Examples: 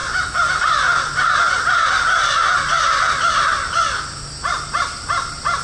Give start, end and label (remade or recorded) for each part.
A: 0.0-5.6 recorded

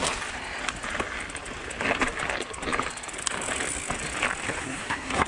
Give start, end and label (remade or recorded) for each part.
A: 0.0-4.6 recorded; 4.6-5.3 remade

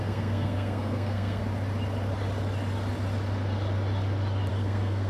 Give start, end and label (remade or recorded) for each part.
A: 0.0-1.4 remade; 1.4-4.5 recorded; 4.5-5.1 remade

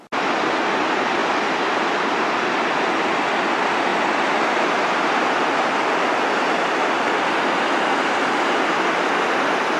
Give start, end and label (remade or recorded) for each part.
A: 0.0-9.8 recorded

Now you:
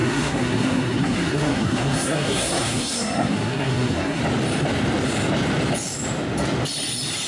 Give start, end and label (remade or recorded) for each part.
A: 0.0-4.2 remade; 4.2-7.3 recorded